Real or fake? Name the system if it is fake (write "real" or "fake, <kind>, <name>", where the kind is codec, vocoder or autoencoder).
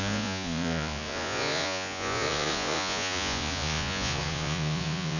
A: fake, vocoder, Vocos